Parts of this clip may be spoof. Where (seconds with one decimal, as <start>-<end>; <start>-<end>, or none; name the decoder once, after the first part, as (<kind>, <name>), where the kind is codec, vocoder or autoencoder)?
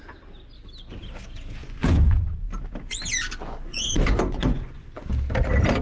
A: 1.6-2.4 (vocoder, Vocos); 3.7-5.1